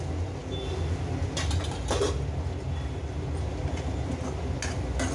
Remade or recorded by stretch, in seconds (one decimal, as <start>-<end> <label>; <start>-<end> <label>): 0.0-5.1 recorded

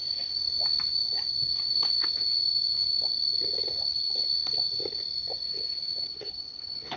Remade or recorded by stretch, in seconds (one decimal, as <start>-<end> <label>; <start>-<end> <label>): 0.0-3.9 recorded; 3.9-4.3 remade; 4.3-6.0 recorded; 6.0-7.0 remade

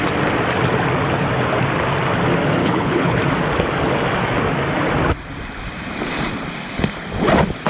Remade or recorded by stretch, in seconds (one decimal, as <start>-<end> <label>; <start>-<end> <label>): 0.0-2.6 recorded; 2.6-3.2 remade; 3.2-7.7 recorded

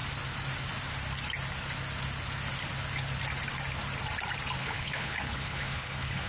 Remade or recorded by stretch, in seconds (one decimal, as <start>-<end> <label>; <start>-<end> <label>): 0.0-4.6 recorded; 4.6-6.3 remade

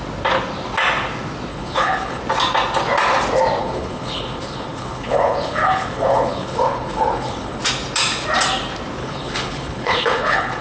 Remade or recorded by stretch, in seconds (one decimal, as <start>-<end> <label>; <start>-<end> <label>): 0.0-1.5 recorded; 1.5-2.2 remade; 2.2-3.6 recorded; 3.6-7.6 remade; 7.6-9.0 recorded; 9.0-10.6 remade

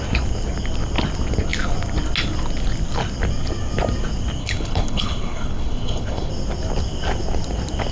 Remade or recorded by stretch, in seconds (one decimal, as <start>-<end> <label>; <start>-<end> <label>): 0.0-4.4 recorded; 4.4-6.3 remade; 6.3-7.9 recorded

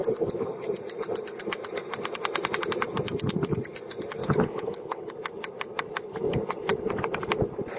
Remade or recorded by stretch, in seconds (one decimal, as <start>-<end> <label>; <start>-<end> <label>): 0.0-4.2 recorded; 4.2-5.1 remade; 5.1-7.8 recorded

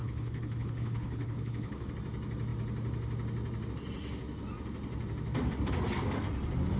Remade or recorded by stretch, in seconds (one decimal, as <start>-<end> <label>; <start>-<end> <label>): 0.0-1.9 remade; 1.9-6.8 recorded